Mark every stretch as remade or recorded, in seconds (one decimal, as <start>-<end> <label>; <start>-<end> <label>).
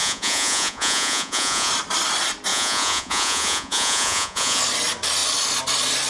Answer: 0.0-1.7 remade; 1.7-2.5 recorded; 2.5-4.6 remade; 4.6-6.1 recorded